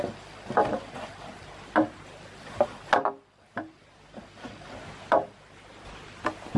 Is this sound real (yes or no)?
yes